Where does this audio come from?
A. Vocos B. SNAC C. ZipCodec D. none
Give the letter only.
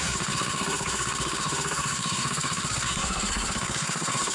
B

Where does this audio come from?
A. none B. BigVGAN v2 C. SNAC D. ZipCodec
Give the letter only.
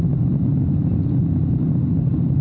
A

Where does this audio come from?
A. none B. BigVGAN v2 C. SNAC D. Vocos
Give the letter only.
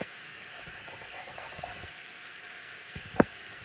C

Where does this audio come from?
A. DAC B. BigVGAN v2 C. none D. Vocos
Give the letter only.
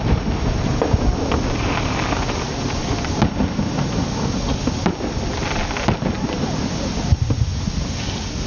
C